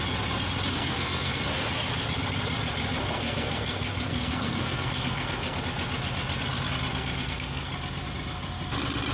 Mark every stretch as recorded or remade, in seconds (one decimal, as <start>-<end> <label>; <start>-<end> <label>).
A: 0.0-0.7 recorded; 0.7-1.4 remade; 1.4-3.0 recorded; 3.0-5.6 remade; 5.6-6.9 recorded; 6.9-7.7 remade; 7.7-9.1 recorded